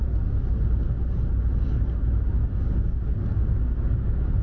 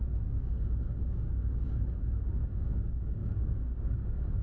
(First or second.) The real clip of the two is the first